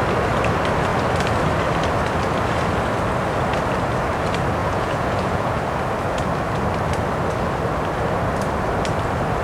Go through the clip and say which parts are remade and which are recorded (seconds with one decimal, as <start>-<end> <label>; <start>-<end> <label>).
0.0-4.6 recorded; 4.6-5.6 remade; 5.6-9.4 recorded